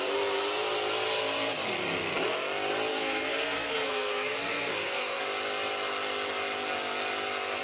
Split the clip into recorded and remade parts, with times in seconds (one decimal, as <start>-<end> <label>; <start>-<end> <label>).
0.0-2.9 recorded; 2.9-5.2 remade; 5.2-7.6 recorded